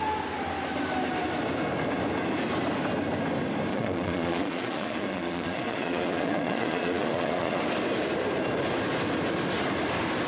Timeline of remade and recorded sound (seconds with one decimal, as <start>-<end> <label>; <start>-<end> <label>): 0.0-3.7 recorded; 3.7-7.6 remade; 7.6-10.3 recorded